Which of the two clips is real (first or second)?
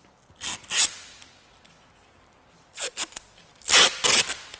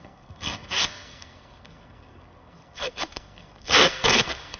first